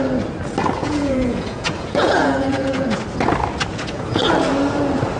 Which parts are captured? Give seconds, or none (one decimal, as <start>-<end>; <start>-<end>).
0.0-0.8; 3.0-3.7; 4.3-5.2